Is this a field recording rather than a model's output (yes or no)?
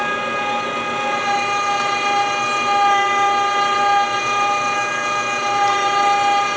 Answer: yes